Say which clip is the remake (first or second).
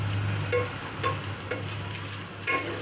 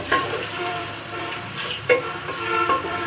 second